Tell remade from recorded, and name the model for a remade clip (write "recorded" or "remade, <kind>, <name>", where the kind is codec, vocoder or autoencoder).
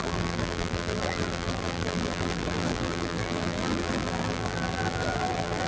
remade, vocoder, BigVGAN v2